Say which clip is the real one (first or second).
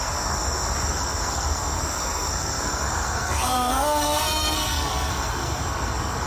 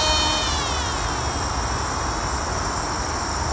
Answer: second